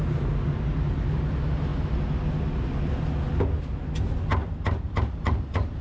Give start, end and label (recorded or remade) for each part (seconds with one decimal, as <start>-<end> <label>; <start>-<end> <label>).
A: 0.0-4.4 recorded; 4.4-5.8 remade